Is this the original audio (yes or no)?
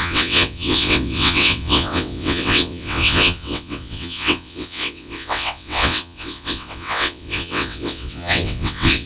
no